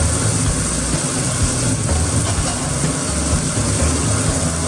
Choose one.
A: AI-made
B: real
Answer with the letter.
B